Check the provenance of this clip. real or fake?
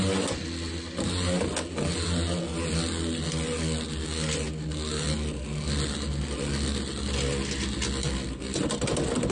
real